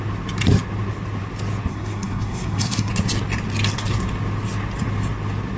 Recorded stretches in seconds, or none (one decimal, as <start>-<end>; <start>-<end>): 0.0-1.7; 2.9-5.6

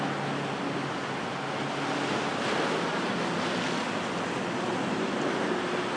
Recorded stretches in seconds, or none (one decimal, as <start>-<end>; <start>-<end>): 0.0-6.0

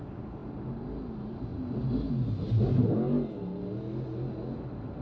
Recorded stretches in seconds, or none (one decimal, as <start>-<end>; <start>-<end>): 0.0-5.0